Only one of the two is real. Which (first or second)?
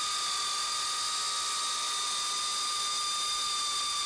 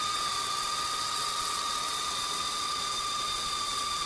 first